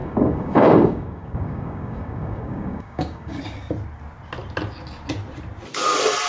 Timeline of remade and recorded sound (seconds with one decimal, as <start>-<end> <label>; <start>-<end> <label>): 0.0-3.4 remade; 3.4-6.3 recorded